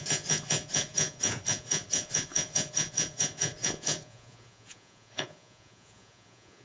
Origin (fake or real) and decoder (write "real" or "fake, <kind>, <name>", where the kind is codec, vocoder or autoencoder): fake, vocoder, Vocos